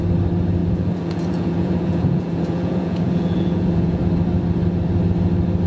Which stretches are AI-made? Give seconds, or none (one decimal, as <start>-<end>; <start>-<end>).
0.6-4.0